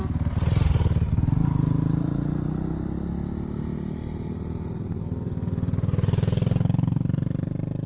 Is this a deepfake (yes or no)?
no